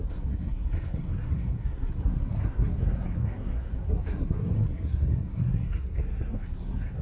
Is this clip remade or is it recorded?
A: remade